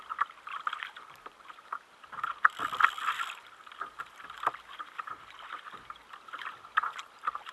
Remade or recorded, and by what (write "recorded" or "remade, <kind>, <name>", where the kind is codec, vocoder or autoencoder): remade, vocoder, BigVGAN v2